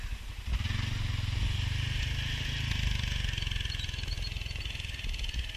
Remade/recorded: recorded